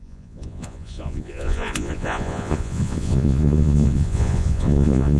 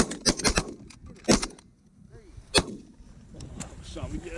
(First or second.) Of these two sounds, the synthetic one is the first